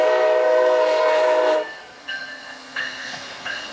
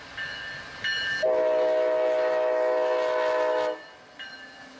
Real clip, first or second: second